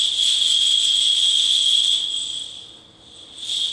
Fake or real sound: real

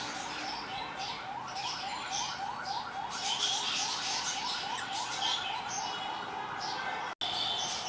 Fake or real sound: real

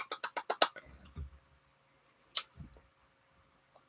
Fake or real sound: real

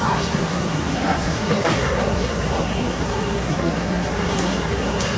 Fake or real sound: fake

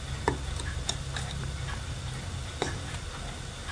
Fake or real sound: real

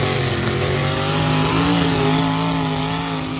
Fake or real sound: real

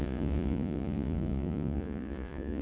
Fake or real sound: fake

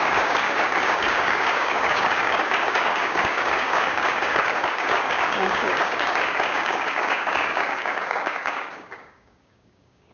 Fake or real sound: fake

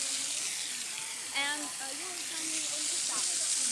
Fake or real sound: real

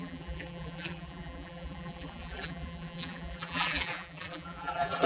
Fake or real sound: fake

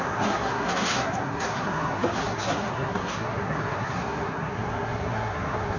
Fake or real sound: fake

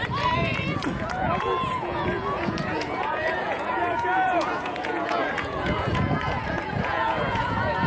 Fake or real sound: fake